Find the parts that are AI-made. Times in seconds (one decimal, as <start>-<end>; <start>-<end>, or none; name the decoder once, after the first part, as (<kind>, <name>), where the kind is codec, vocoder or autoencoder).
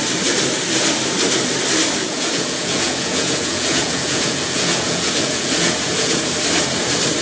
2.0-6.3 (vocoder, Vocos)